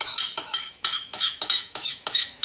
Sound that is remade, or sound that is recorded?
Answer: remade